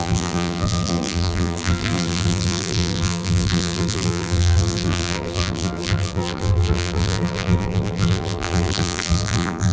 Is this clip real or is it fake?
fake